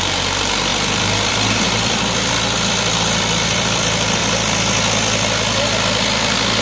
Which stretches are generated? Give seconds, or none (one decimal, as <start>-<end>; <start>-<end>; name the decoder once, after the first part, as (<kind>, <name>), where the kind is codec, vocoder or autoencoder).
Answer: 0.0-4.2 (vocoder, BigVGAN v2)